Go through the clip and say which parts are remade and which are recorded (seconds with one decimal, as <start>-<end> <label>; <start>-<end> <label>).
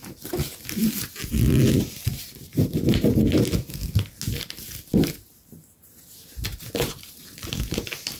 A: 0.0-1.9 recorded; 1.9-2.5 remade; 2.5-6.6 recorded; 6.6-8.2 remade